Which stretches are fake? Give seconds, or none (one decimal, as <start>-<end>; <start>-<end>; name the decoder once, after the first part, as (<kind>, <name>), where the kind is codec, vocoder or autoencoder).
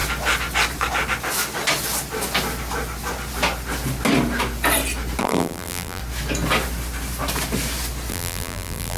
5.2-6.0 (vocoder, BigVGAN v2); 8.1-9.0